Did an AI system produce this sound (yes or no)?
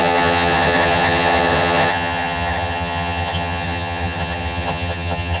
yes